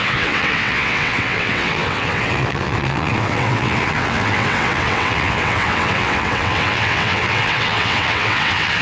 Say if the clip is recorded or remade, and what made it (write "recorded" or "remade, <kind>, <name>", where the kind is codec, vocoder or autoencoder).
remade, vocoder, WaveNeXt